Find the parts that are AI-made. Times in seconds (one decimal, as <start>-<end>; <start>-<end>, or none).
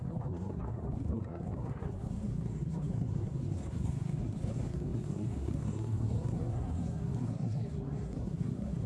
0.0-8.9